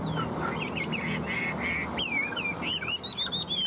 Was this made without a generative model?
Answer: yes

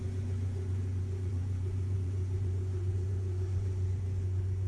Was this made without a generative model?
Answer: no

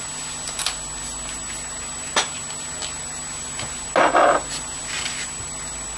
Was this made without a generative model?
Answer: yes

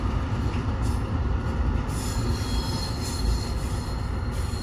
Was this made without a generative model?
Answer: yes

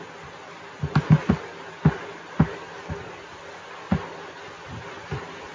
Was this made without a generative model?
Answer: yes